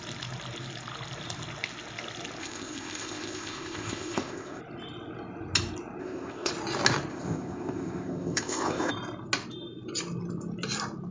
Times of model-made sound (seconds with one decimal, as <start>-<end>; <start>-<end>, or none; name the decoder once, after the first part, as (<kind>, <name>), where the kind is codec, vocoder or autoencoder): 2.4-4.6 (codec, ZipCodec); 6.0-6.5; 7.1-8.9

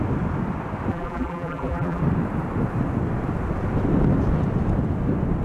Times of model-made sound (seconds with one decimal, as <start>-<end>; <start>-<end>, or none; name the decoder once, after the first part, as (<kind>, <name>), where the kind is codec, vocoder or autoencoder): 0.9-2.0 (vocoder, BigVGAN v2)

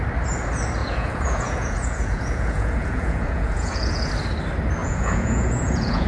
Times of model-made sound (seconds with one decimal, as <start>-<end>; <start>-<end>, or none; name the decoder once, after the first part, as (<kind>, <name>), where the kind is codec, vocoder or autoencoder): 0.8-4.1 (vocoder, Vocos); 4.8-6.1